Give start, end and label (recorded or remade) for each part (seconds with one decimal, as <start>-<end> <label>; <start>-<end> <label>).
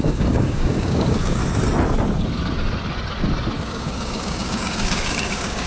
0.0-1.4 remade; 1.4-3.6 recorded; 3.6-5.7 remade